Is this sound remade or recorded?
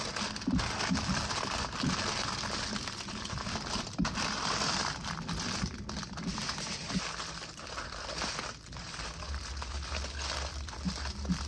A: recorded